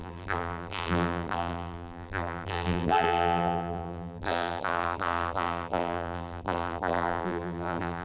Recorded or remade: remade